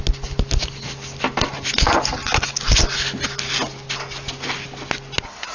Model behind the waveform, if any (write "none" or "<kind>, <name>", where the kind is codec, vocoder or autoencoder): none